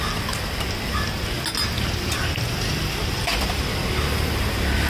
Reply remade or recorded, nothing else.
recorded